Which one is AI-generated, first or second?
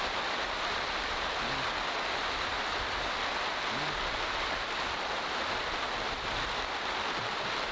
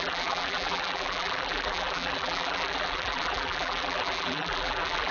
second